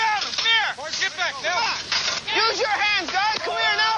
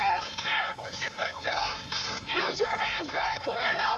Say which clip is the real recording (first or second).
first